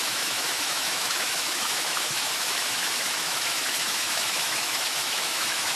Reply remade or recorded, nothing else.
remade